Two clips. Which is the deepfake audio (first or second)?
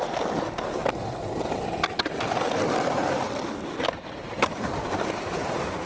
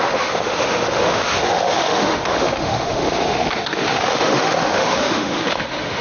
second